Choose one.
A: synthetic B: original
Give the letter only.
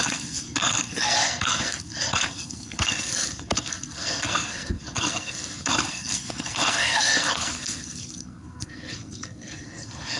A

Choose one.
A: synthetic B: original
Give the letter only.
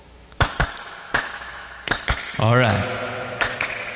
A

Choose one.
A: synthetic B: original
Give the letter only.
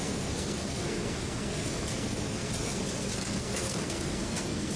A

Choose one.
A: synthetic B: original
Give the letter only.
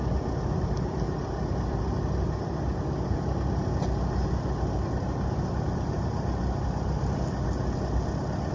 B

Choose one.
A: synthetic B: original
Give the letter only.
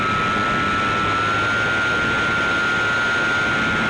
B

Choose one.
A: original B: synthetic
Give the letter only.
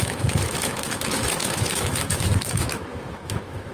B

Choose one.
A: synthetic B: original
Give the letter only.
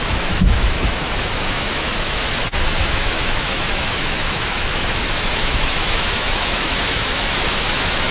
A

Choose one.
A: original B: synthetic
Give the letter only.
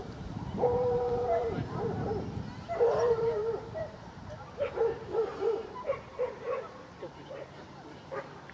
B